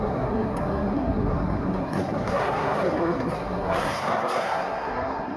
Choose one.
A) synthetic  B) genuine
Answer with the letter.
A